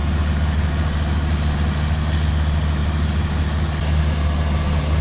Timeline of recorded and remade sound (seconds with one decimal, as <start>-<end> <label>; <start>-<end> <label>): 0.0-5.0 recorded

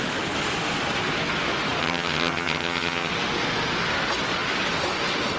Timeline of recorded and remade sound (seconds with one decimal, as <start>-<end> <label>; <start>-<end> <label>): 0.0-1.8 recorded; 1.8-3.1 remade; 3.1-5.4 recorded

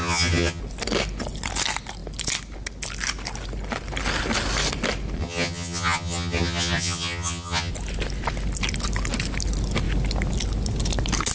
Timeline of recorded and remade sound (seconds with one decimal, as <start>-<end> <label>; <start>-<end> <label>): 0.0-0.6 remade; 0.6-5.2 recorded; 5.2-7.7 remade; 7.7-11.3 recorded

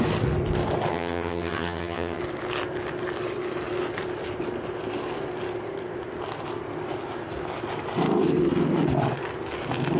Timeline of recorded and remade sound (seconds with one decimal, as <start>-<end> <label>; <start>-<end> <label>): 0.0-0.9 recorded; 0.9-2.2 remade; 2.2-10.0 recorded

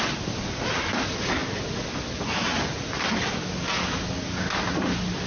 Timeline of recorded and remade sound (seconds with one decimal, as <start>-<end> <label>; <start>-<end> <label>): 0.0-5.3 recorded

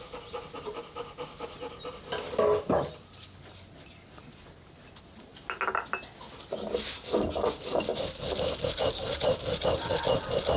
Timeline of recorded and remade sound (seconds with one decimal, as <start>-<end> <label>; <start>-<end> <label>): 0.0-10.6 recorded